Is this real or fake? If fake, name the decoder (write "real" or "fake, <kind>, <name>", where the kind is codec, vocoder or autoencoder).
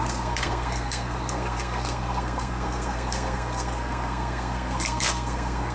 fake, codec, SNAC